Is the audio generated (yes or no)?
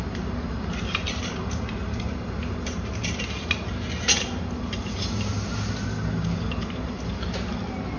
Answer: no